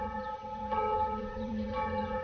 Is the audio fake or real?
fake